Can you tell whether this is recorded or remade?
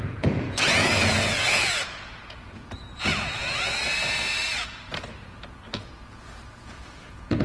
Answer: remade